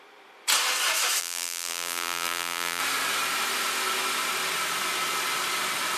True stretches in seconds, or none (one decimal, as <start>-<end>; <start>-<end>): 0.0-1.2; 2.8-6.0